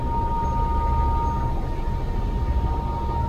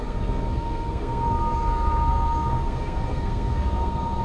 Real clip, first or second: first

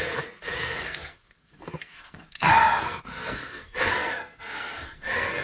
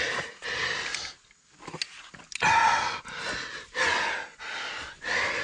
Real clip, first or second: second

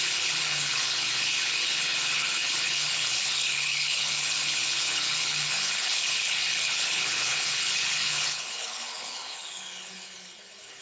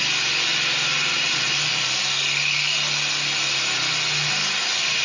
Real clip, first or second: second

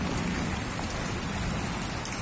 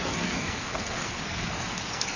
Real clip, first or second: first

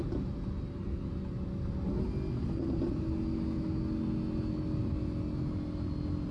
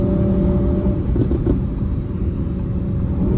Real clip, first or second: first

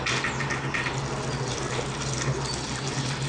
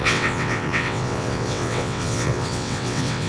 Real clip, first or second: first